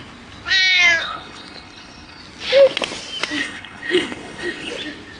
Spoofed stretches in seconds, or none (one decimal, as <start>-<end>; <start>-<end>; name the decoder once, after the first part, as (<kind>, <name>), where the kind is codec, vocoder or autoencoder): 1.0-2.2 (codec, HILCodec); 3.4-4.7